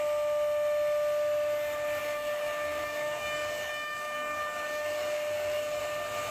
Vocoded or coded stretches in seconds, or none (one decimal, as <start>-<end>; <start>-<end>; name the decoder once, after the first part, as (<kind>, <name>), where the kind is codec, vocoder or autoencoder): 2.0-5.8 (codec, DAC)